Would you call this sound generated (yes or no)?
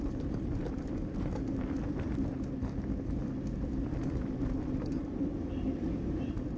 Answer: no